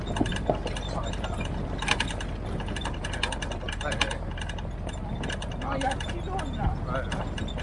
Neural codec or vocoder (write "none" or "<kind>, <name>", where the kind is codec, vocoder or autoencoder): none